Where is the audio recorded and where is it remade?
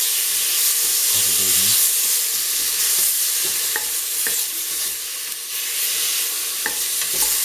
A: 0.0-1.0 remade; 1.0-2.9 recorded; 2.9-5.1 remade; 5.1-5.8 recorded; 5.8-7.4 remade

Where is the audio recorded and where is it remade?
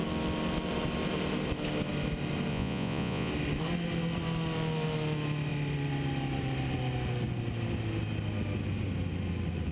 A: 0.0-2.5 recorded; 2.5-3.3 remade; 3.3-9.7 recorded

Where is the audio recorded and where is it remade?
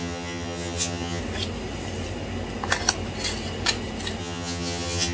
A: 0.0-1.2 remade; 1.2-4.2 recorded; 4.2-5.1 remade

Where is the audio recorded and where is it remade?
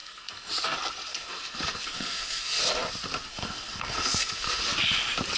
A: 0.0-0.5 remade; 0.5-1.1 recorded; 1.1-2.6 remade; 2.6-3.3 recorded; 3.3-4.6 remade; 4.6-5.4 recorded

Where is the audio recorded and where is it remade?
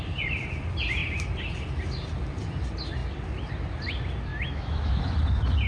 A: 0.0-4.3 recorded; 4.3-5.0 remade; 5.0-5.7 recorded